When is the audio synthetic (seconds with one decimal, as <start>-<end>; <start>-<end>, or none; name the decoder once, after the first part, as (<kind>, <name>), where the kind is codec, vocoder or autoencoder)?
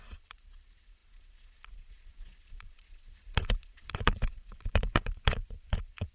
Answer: 0.0-6.1 (vocoder, Vocos)